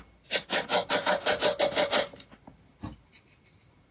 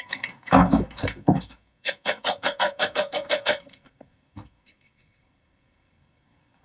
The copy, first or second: second